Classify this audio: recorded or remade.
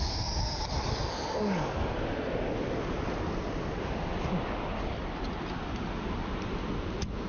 recorded